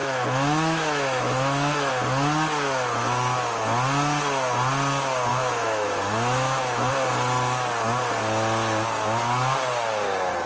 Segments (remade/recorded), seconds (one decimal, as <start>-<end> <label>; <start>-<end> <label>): 0.0-1.9 remade; 1.9-5.3 recorded; 5.3-6.9 remade; 6.9-10.5 recorded